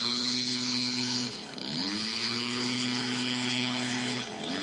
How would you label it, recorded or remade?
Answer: remade